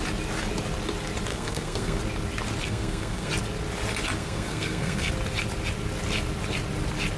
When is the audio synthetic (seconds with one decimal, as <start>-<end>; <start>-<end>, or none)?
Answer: 1.3-2.0; 2.6-3.3; 4.2-5.1